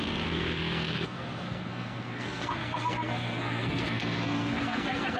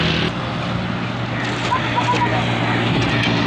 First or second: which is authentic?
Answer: second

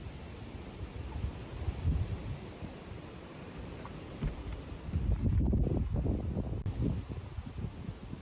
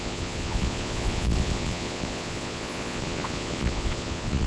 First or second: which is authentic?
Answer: first